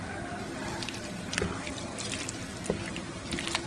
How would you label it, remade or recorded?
recorded